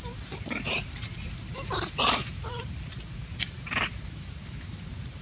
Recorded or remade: remade